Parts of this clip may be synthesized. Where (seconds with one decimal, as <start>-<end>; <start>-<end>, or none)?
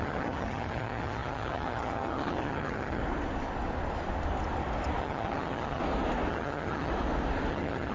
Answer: 0.0-3.0; 5.0-5.8; 6.3-6.9; 7.5-7.9